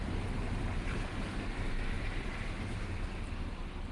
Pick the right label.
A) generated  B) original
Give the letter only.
B